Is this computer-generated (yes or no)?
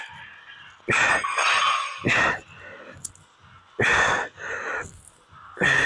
no